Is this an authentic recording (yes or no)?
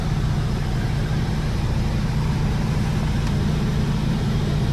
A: no